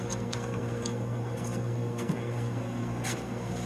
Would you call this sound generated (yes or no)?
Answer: yes